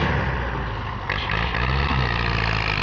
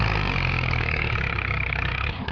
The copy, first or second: second